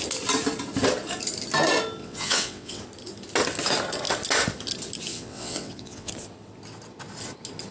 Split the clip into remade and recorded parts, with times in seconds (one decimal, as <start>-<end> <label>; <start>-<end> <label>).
0.0-2.0 recorded; 2.0-2.8 remade; 2.8-5.1 recorded; 5.1-6.1 remade; 6.1-7.7 recorded